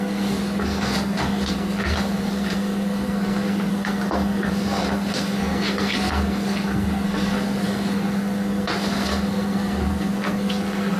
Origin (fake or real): fake